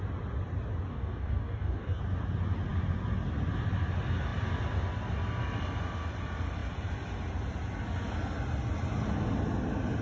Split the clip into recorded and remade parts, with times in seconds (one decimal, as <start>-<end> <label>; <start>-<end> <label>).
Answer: 0.0-0.9 recorded; 0.9-2.0 remade; 2.0-10.0 recorded